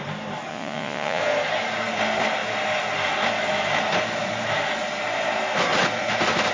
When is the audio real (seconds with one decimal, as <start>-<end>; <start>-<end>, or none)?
0.0-0.5; 1.2-6.5